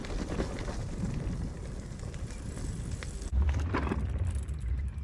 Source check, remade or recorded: recorded